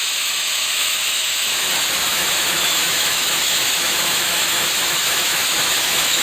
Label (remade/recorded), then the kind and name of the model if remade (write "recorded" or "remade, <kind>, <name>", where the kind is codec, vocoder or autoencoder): remade, autoencoder, DAC-VAE